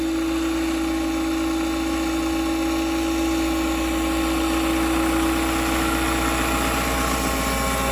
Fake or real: real